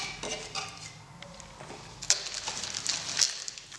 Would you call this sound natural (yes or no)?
yes